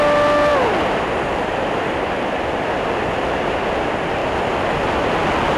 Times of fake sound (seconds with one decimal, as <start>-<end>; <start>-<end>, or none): none